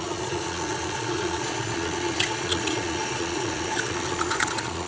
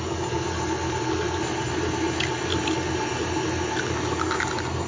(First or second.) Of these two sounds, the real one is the second